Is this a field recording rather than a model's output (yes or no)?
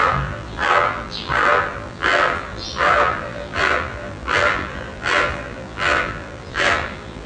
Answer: no